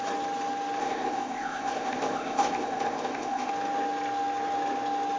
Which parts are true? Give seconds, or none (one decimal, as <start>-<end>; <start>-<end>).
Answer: 0.0-0.8; 3.5-5.2